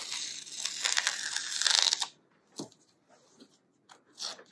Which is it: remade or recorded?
recorded